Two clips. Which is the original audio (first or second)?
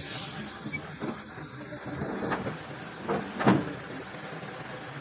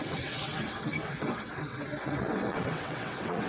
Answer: first